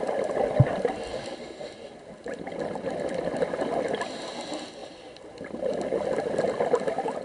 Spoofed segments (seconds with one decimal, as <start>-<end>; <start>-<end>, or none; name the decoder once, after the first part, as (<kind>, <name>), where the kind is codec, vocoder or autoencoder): none